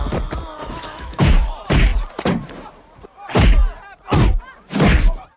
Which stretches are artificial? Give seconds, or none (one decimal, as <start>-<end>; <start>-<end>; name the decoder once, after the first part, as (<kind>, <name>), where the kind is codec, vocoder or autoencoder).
0.6-1.2 (autoencoder, DAC-VAE)